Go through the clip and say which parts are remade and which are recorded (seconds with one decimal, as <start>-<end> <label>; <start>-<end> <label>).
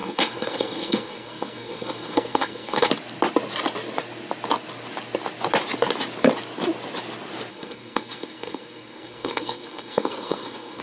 0.0-2.9 remade; 2.9-7.5 recorded; 7.5-10.8 remade